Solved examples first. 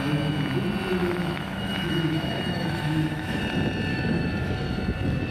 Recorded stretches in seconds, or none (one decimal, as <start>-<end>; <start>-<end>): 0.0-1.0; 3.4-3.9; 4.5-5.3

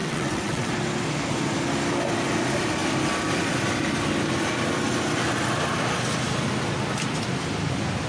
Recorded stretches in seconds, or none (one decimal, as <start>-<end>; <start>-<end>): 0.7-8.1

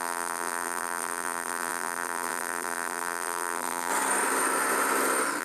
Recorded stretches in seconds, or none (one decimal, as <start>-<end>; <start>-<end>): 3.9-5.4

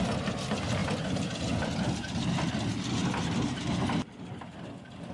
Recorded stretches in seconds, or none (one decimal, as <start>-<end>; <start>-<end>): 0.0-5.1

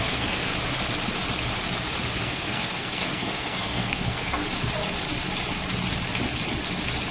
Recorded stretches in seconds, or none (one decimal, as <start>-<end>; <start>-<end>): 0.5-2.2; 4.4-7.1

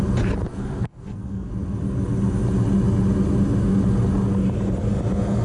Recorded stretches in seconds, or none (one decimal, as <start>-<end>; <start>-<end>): 0.0-0.5; 1.5-5.4